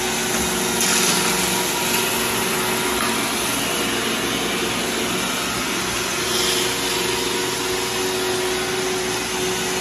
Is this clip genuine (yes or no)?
yes